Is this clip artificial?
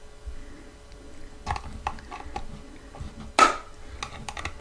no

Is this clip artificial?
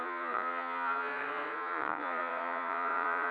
yes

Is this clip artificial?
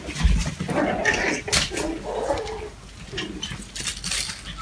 no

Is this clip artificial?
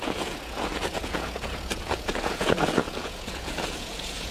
yes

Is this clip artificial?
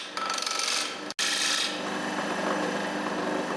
no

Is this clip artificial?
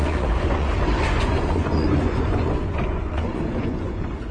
yes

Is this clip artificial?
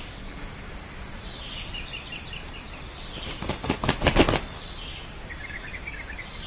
no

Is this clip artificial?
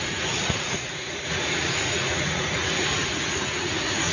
yes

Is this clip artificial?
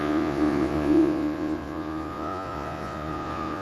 yes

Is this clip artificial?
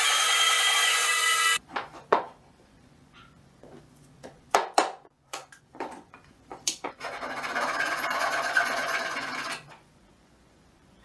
yes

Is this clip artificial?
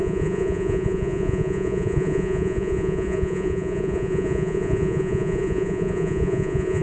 yes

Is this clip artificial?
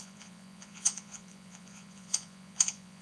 yes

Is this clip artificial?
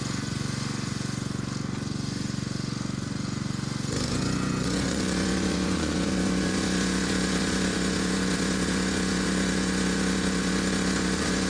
yes